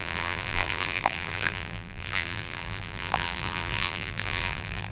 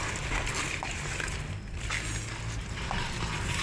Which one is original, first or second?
second